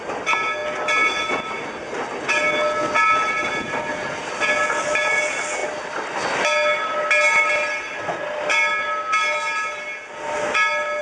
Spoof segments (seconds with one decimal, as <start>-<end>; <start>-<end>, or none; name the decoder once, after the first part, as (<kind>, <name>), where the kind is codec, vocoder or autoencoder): none